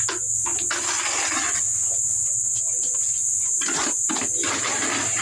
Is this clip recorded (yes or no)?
yes